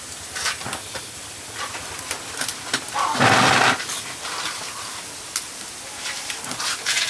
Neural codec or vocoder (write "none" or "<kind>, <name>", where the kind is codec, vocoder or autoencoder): none